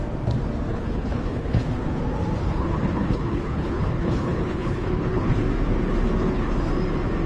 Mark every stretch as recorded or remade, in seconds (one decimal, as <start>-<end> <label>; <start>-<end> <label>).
0.0-0.7 recorded; 0.7-2.0 remade; 2.0-2.4 recorded; 2.4-5.4 remade; 5.4-6.2 recorded; 6.2-6.7 remade; 6.7-7.3 recorded